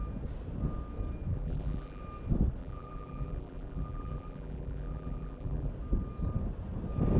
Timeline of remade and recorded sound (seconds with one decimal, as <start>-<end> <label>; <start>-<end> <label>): 0.0-1.3 recorded; 1.3-2.0 remade; 2.0-2.6 recorded; 2.6-5.7 remade; 5.7-7.2 recorded